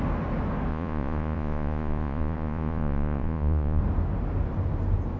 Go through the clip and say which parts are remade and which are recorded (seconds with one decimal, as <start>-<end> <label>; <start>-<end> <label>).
0.0-0.7 recorded; 0.7-3.8 remade; 3.8-5.2 recorded